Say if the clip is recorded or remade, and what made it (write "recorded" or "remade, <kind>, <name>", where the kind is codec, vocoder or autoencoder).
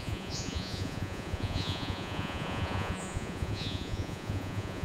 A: remade, vocoder, Vocos